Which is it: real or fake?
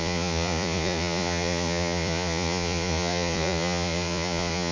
fake